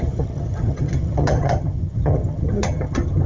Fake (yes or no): yes